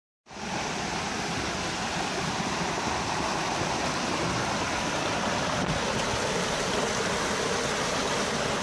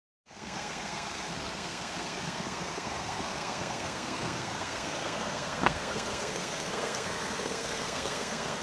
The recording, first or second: first